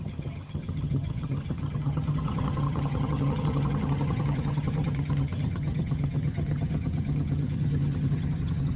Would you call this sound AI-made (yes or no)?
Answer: yes